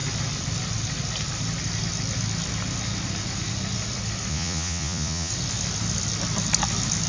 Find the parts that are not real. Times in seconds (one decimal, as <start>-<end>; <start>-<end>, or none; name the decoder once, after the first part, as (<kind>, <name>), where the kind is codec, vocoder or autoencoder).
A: 4.3-5.3 (vocoder, Vocos)